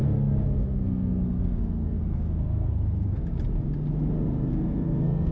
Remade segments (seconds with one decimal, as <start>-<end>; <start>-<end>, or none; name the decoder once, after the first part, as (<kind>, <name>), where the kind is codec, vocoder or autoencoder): 0.0-3.2 (codec, SNAC); 4.5-5.3